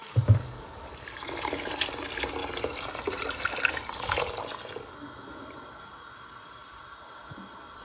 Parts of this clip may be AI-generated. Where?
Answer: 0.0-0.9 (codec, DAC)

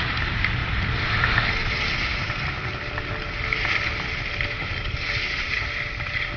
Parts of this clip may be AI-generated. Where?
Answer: none

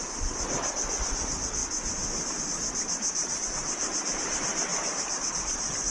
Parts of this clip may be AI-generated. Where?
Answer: none

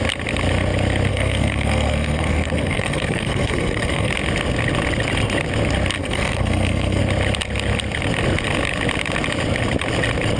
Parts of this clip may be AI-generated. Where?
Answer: 1.1-4.1 (codec, SNAC); 6.0-7.0

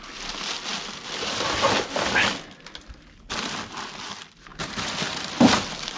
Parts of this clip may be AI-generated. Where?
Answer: 4.5-5.3 (vocoder, BigVGAN v2)

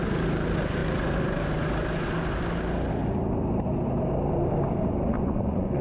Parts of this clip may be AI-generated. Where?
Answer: 5.1-5.8 (vocoder, Vocos)

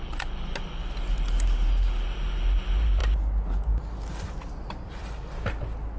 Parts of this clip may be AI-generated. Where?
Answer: none

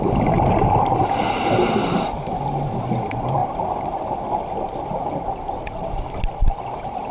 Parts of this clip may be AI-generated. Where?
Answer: 3.4-4.0 (vocoder, BigVGAN v2)